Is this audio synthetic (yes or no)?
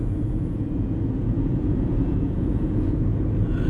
yes